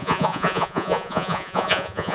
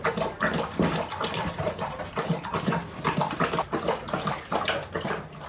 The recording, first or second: second